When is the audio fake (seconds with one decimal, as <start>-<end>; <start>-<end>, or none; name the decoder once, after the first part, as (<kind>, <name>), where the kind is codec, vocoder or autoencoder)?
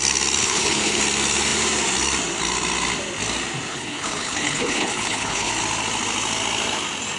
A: 0.4-1.0 (codec, HILCodec); 3.7-5.5